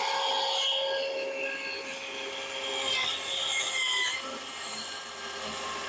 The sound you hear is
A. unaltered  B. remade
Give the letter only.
A